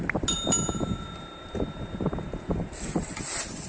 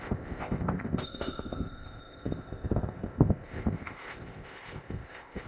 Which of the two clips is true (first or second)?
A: first